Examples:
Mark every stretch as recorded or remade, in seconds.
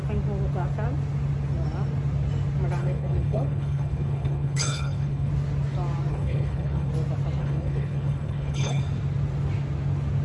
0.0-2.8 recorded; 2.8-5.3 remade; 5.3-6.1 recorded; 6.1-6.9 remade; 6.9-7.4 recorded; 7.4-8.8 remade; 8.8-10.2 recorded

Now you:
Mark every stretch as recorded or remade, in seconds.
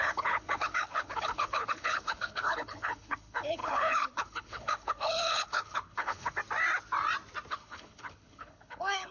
0.0-6.4 remade; 6.4-7.5 recorded; 7.5-9.1 remade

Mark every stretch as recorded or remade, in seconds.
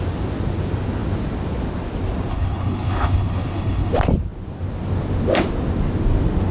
0.0-2.3 recorded; 2.3-3.9 remade; 3.9-6.5 recorded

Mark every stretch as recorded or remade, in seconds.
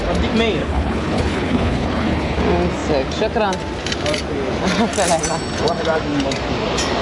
0.0-0.6 recorded; 0.6-2.4 remade; 2.4-7.0 recorded